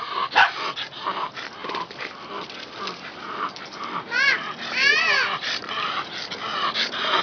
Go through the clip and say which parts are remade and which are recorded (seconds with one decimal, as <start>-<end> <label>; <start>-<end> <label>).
0.0-1.6 recorded; 1.6-5.9 remade; 5.9-7.2 recorded